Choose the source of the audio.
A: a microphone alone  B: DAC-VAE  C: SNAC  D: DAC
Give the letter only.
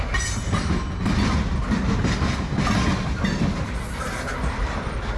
A